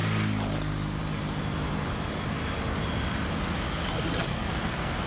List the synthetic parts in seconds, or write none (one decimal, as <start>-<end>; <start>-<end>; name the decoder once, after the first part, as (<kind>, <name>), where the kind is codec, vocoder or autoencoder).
4.2-5.1 (codec, SNAC)